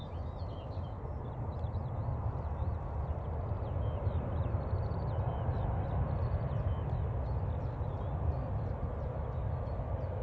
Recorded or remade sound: recorded